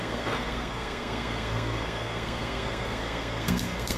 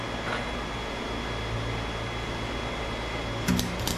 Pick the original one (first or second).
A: second